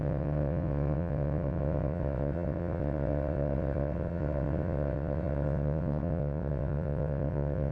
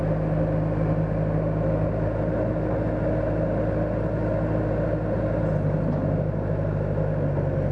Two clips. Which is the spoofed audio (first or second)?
first